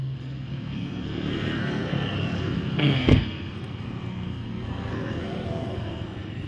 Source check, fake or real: fake